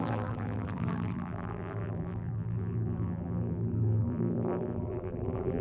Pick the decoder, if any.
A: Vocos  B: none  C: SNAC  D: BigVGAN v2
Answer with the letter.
D